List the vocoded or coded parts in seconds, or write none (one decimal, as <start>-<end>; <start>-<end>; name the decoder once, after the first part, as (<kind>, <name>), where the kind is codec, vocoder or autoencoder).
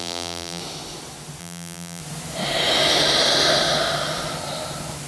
0.0-0.6 (vocoder, BigVGAN v2); 1.4-2.0